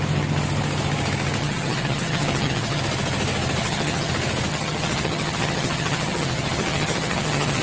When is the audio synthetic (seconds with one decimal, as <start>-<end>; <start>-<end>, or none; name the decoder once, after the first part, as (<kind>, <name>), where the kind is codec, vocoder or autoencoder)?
1.4-2.8 (vocoder, HiFi-GAN); 3.6-4.1; 4.5-7.6